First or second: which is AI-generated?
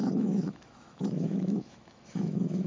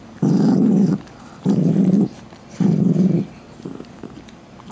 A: first